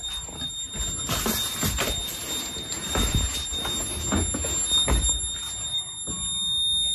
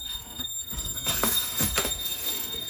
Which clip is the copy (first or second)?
second